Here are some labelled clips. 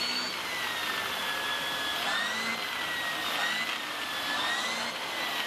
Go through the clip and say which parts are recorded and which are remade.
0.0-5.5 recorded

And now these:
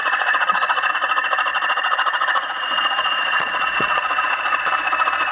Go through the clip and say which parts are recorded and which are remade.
0.0-0.9 remade; 0.9-1.5 recorded; 1.5-4.7 remade; 4.7-5.3 recorded

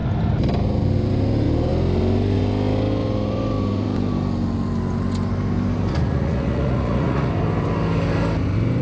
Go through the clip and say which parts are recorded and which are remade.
0.0-5.9 recorded; 5.9-7.3 remade; 7.3-8.8 recorded

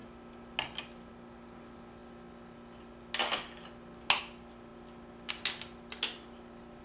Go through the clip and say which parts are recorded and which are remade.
0.0-6.8 recorded